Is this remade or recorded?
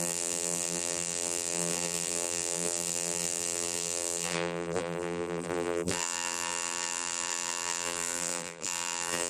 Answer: remade